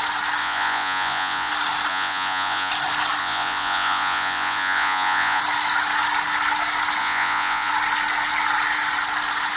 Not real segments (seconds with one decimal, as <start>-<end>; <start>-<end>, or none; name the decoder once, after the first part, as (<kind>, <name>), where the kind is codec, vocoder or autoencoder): 0.4-1.5 (vocoder, Vocos); 1.9-2.7; 3.2-5.4; 7.0-7.7